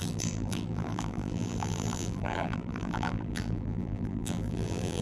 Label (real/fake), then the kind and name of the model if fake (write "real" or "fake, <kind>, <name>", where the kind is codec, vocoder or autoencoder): fake, vocoder, BigVGAN v2